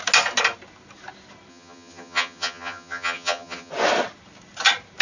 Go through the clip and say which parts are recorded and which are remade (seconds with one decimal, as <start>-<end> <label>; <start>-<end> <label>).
0.0-1.5 recorded; 1.5-3.7 remade; 3.7-5.0 recorded